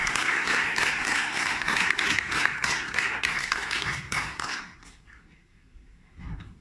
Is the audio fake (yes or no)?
yes